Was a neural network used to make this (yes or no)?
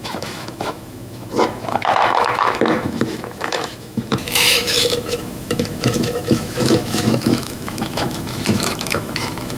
yes